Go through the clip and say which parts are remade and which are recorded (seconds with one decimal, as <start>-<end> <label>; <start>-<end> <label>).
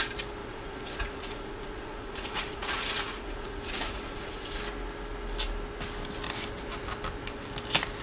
0.0-0.4 recorded; 0.4-4.6 remade; 4.6-8.0 recorded